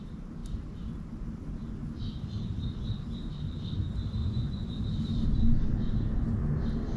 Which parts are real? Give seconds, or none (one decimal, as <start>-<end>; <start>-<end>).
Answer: 0.0-4.2; 4.8-7.0